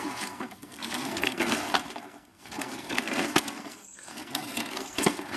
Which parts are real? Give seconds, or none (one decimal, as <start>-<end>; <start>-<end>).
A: none